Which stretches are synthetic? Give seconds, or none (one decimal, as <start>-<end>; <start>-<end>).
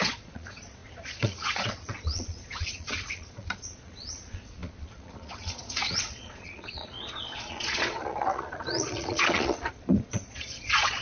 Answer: 0.0-11.0